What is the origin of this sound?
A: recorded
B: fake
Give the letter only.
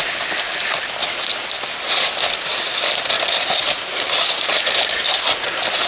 A